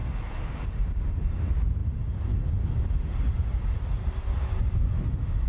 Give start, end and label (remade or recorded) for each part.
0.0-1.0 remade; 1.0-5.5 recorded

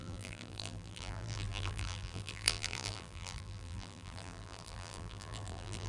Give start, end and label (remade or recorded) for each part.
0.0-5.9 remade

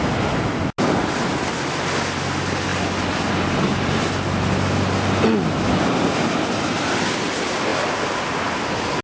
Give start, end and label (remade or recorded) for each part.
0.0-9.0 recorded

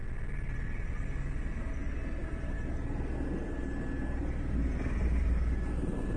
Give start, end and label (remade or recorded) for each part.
0.0-2.2 recorded; 2.2-3.6 remade; 3.6-4.2 recorded; 4.2-5.2 remade; 5.2-6.2 recorded

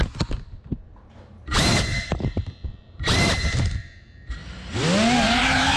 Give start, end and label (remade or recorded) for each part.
0.0-0.9 recorded; 0.9-4.4 remade; 4.4-5.8 recorded

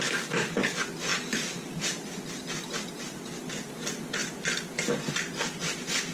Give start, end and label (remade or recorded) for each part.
0.0-6.1 recorded

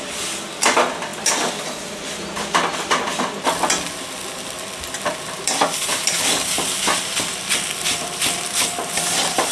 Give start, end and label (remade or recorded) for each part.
0.0-1.1 remade; 1.1-2.1 recorded; 2.1-9.5 remade